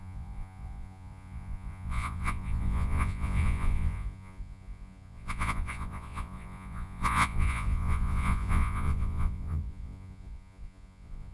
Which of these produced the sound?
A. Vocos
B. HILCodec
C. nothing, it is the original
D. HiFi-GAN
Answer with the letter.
A